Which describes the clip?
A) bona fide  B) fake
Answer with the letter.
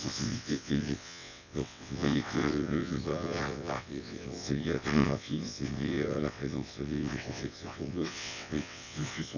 B